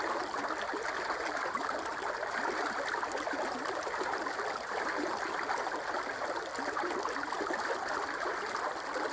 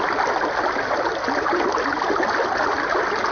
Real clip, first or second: second